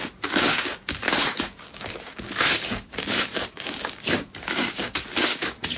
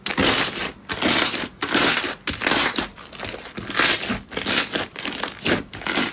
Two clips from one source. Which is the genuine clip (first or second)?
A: second